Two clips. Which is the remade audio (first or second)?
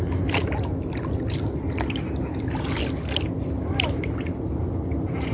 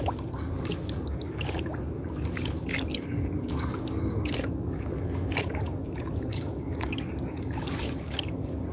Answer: second